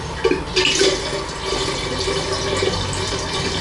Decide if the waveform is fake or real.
real